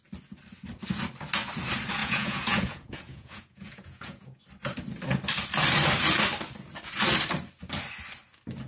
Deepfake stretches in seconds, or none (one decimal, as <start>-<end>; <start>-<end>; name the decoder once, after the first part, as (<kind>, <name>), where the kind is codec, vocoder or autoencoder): 2.0-4.4 (vocoder, Vocos)